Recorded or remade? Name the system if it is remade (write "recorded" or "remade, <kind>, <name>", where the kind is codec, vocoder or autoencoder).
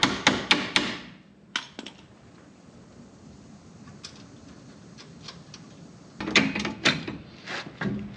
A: recorded